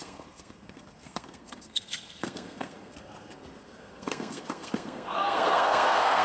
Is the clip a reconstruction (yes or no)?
yes